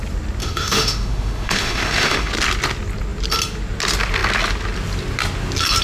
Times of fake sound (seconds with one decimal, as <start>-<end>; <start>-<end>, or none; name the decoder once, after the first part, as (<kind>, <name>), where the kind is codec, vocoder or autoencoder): 0.4-2.3 (autoencoder, DAC-VAE)